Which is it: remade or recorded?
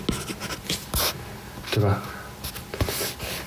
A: recorded